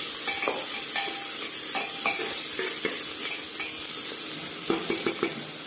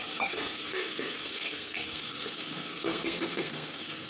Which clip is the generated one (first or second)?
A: second